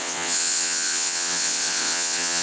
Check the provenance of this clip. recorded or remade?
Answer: remade